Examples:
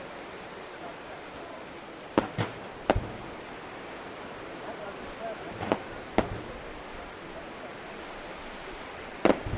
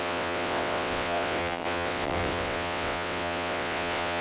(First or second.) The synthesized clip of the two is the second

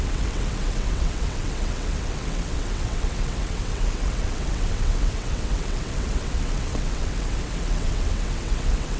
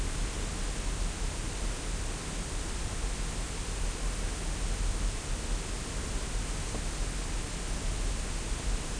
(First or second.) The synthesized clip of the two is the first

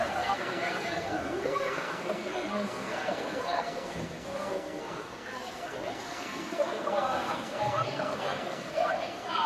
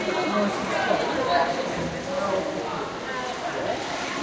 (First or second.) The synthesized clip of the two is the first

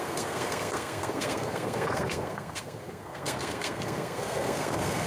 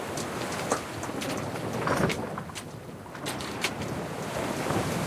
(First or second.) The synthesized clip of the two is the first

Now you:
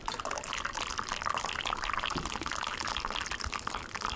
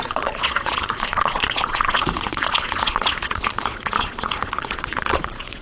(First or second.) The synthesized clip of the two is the second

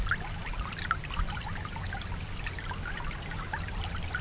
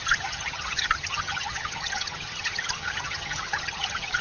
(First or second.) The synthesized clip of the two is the second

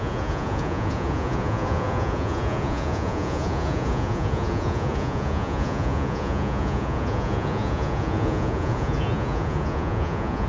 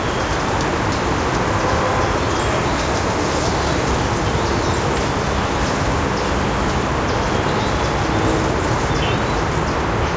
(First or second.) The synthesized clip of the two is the first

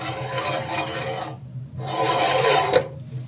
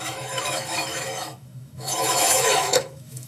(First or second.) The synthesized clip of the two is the second